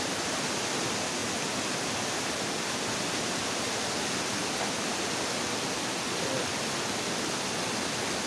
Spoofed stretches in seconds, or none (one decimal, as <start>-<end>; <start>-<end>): none